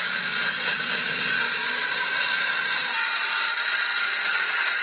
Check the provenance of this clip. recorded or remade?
remade